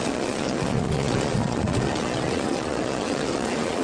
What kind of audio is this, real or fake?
fake